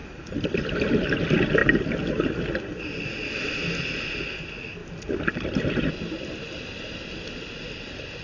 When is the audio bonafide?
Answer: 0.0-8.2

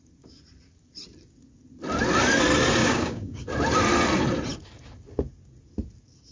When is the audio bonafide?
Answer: 0.0-2.8; 3.4-6.3

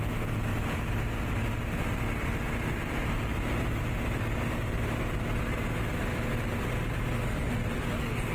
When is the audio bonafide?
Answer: 0.0-8.3

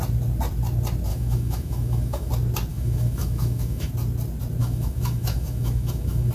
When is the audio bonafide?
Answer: 0.0-1.1; 2.3-2.7; 3.9-4.6

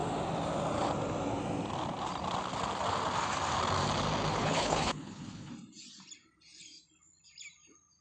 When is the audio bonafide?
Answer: 0.0-4.3; 5.5-8.0

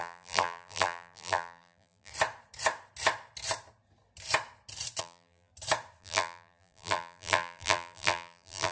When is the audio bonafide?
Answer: 2.1-5.0; 5.5-6.0

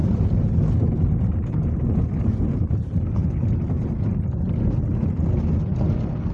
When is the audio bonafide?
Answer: 0.0-6.3